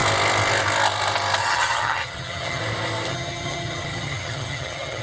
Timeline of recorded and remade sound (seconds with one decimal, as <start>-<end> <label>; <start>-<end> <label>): 0.0-1.4 recorded; 1.4-2.6 remade; 2.6-3.1 recorded; 3.1-5.0 remade